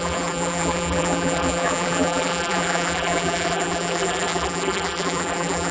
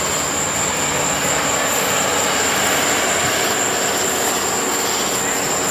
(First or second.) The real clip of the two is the second